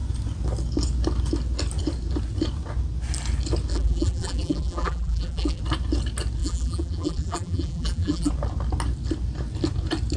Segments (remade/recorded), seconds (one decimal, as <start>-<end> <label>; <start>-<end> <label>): 0.0-3.7 recorded; 3.7-5.6 remade; 5.6-6.4 recorded; 6.4-8.3 remade; 8.3-10.2 recorded